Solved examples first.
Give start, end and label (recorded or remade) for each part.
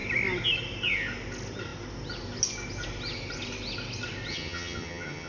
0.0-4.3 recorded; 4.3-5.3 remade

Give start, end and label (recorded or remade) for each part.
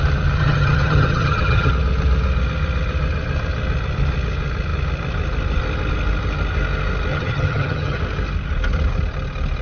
0.0-0.4 recorded; 0.4-1.7 remade; 1.7-7.1 recorded; 7.1-8.0 remade; 8.0-9.6 recorded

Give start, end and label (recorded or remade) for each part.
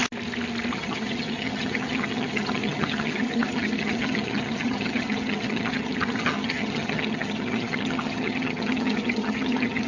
0.0-0.7 recorded; 0.7-9.9 remade